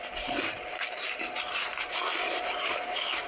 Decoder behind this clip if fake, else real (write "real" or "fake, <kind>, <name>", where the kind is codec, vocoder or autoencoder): fake, vocoder, BigVGAN v2